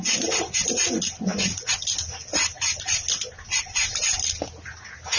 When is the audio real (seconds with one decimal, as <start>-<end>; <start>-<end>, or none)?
0.0-5.2